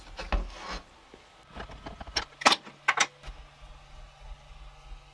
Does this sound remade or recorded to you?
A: recorded